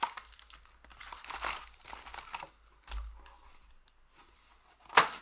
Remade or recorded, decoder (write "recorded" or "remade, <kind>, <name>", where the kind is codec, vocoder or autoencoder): recorded